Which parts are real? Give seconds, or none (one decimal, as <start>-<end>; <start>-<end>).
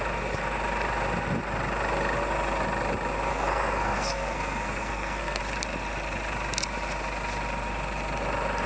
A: 0.0-3.3; 5.4-8.7